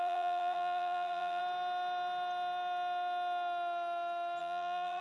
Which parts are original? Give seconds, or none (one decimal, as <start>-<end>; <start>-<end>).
1.4-4.4